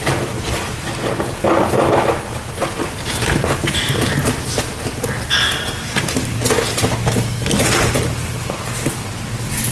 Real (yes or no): yes